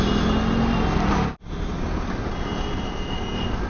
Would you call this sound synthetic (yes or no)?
no